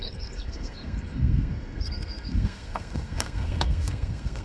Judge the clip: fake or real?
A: fake